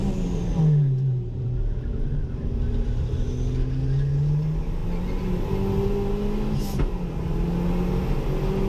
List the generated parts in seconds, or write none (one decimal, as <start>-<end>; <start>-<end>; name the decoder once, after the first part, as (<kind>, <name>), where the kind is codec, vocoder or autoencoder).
0.0-3.3 (vocoder, BigVGAN v2); 4.8-5.5